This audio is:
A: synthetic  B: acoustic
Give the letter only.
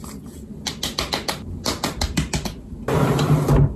B